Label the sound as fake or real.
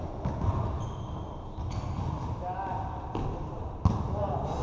real